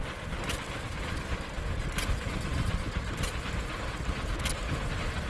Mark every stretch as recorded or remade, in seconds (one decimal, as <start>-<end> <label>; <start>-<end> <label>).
0.0-1.3 remade; 1.3-2.5 recorded; 2.5-4.0 remade; 4.0-5.3 recorded